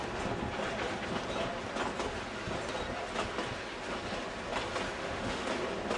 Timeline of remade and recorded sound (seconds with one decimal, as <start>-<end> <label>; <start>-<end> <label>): 0.0-5.0 recorded; 5.0-5.5 remade; 5.5-6.0 recorded